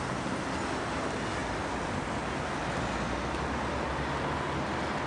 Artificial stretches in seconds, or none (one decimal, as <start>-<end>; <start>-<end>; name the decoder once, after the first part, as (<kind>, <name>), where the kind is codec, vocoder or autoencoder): none